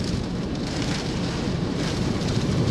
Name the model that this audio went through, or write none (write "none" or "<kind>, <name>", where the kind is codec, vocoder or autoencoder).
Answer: vocoder, BigVGAN v2